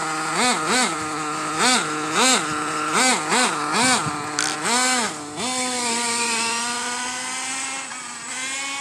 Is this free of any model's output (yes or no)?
yes